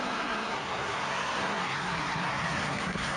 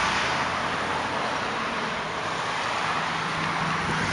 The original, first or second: second